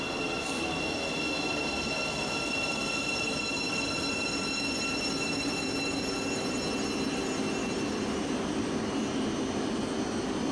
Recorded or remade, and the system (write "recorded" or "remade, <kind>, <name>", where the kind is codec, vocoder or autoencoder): recorded